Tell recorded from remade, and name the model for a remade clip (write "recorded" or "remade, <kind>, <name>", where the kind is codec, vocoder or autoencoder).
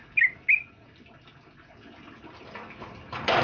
recorded